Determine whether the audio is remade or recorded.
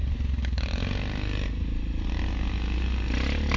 recorded